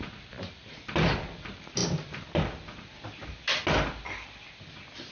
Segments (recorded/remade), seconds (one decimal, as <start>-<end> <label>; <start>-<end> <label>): 0.0-5.1 recorded